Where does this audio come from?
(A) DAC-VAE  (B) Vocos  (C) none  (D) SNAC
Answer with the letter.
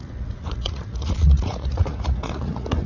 B